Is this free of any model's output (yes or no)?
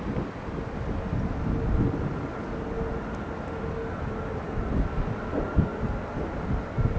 yes